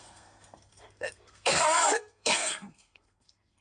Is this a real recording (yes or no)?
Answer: no